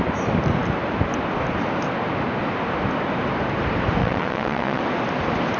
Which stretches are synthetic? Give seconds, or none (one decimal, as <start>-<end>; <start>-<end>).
4.0-4.8